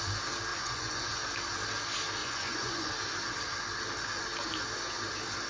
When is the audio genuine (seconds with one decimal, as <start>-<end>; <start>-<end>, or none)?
0.0-0.5; 1.2-2.2; 2.9-5.5

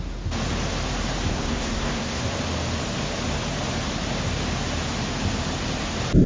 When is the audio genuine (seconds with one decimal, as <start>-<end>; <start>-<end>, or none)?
0.0-1.3; 2.2-6.3

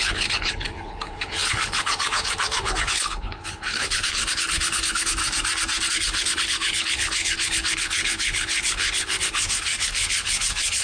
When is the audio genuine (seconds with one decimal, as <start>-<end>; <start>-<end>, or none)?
5.2-5.9